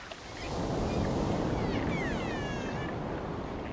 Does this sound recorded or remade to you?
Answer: recorded